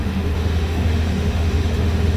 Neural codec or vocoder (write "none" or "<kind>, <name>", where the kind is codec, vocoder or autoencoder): autoencoder, DAC-VAE